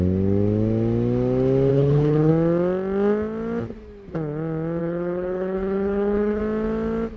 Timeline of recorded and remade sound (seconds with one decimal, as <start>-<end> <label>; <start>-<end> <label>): 0.0-1.7 recorded; 1.7-2.3 remade; 2.3-4.8 recorded; 4.8-6.4 remade; 6.4-7.2 recorded